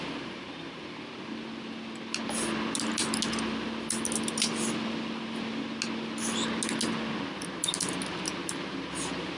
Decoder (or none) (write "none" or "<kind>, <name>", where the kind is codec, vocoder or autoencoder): none